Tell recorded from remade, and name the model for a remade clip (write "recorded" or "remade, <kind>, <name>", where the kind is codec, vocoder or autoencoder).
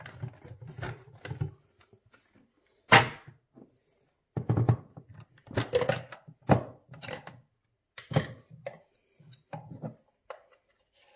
recorded